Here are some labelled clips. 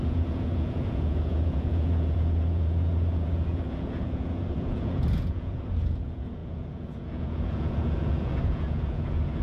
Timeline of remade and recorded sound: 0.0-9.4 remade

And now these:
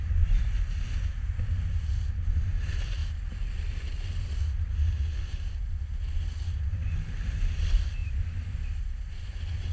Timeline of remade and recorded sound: 0.0-9.7 recorded

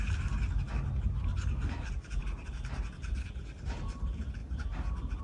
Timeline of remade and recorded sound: 0.0-1.3 recorded; 1.3-2.2 remade; 2.2-4.4 recorded; 4.4-5.2 remade

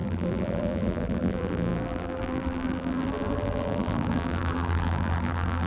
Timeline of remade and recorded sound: 0.0-5.7 remade